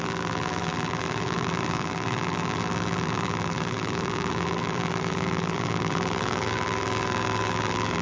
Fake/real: fake